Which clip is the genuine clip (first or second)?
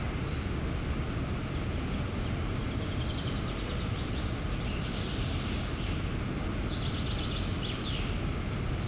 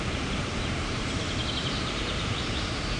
first